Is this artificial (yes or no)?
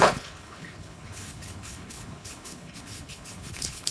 yes